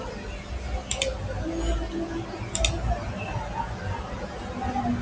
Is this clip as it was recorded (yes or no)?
yes